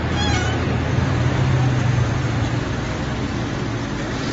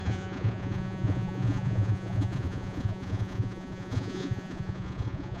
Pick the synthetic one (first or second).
second